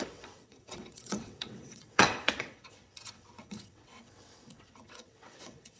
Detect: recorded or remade remade